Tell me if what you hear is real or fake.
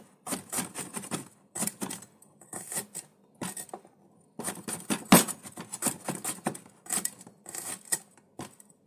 real